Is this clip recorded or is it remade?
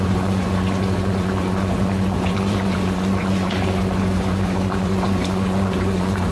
remade